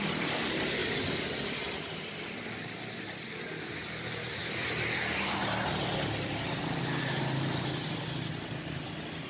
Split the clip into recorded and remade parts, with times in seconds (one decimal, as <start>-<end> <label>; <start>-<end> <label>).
0.0-9.3 recorded